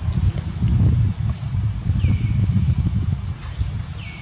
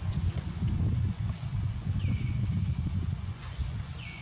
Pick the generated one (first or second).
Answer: second